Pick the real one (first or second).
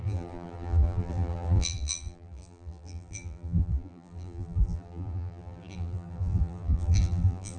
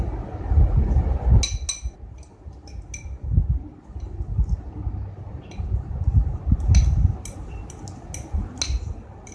second